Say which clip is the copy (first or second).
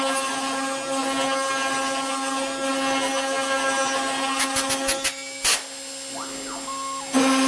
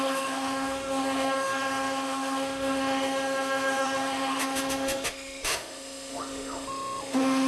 second